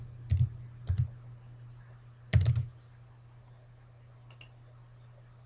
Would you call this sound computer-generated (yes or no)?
no